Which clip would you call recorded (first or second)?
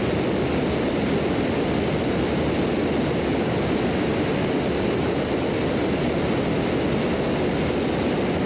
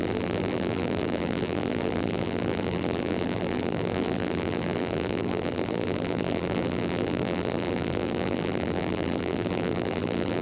first